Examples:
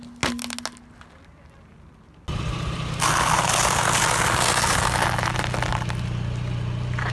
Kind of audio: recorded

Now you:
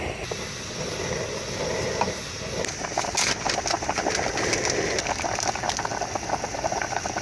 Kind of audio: recorded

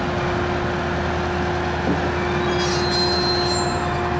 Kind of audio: recorded